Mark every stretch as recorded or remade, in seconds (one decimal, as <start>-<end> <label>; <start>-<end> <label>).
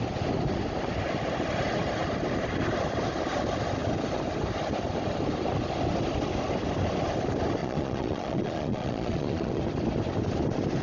0.0-7.6 recorded; 7.6-9.6 remade; 9.6-10.8 recorded